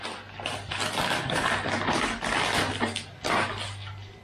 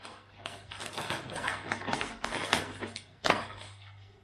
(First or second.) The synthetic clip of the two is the second